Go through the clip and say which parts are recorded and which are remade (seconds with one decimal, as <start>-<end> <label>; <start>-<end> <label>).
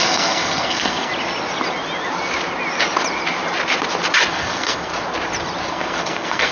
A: 0.0-1.1 remade; 1.1-4.3 recorded; 4.3-4.9 remade; 4.9-5.7 recorded; 5.7-6.5 remade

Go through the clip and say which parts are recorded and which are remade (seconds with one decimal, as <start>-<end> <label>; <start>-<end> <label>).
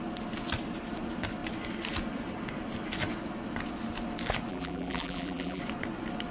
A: 0.0-4.5 recorded; 4.5-5.6 remade; 5.6-6.3 recorded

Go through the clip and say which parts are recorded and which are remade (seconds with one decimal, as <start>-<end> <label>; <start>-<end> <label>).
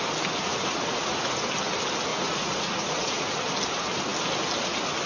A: 0.0-0.5 recorded; 0.5-1.5 remade; 1.5-2.1 recorded; 2.1-3.3 remade; 3.3-5.1 recorded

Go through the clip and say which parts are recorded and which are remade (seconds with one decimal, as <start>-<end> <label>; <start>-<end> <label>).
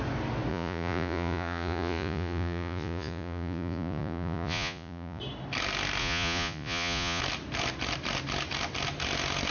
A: 0.0-0.5 recorded; 0.5-5.2 remade; 5.2-6.0 recorded; 6.0-7.2 remade; 7.2-9.5 recorded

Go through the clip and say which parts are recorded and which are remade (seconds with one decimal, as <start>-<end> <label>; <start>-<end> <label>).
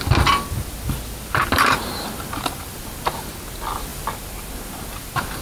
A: 0.0-1.4 recorded; 1.4-3.3 remade; 3.3-3.9 recorded; 3.9-5.4 remade